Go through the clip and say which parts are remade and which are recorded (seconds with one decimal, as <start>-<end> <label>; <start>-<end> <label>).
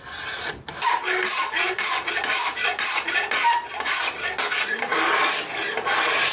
0.0-1.3 recorded; 1.3-2.1 remade; 2.1-6.3 recorded